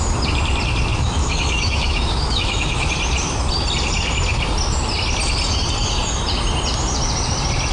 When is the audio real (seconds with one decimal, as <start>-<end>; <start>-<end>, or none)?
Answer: 0.0-0.9; 2.9-7.7